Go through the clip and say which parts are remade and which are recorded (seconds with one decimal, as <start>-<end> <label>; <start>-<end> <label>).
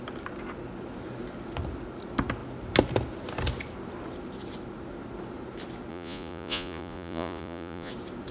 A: 0.0-5.9 recorded; 5.9-7.9 remade; 7.9-8.3 recorded